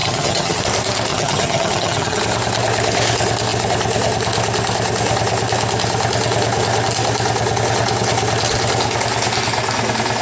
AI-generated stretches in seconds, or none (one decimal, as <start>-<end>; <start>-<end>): 0.0-0.6; 1.1-2.2